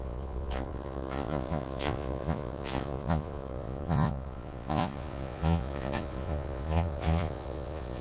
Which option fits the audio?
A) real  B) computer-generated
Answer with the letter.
B